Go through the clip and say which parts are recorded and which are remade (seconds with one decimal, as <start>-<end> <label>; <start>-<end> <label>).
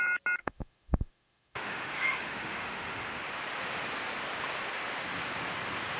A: 0.0-0.4 recorded; 0.4-3.2 remade; 3.2-6.0 recorded